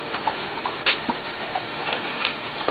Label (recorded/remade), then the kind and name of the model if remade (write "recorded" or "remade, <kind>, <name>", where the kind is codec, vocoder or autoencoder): remade, autoencoder, DAC-VAE